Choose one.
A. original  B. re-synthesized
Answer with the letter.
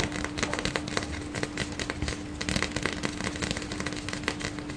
A